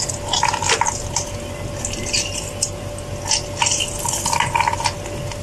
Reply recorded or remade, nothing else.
recorded